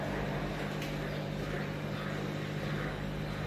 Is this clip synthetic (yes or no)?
no